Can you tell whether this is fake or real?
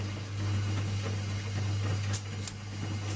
real